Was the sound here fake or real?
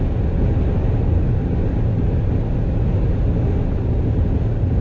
real